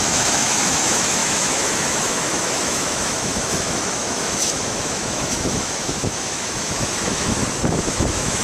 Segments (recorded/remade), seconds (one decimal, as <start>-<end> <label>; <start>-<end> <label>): 0.0-7.4 remade; 7.4-7.9 recorded; 7.9-8.4 remade